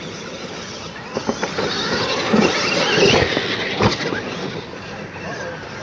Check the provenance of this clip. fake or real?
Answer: real